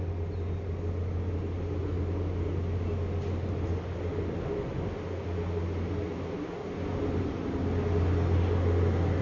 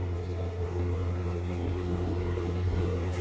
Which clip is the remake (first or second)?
second